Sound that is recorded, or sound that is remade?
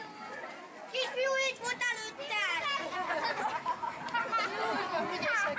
recorded